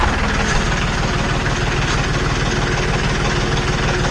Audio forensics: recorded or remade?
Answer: recorded